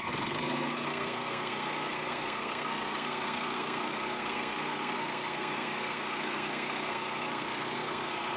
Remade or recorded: remade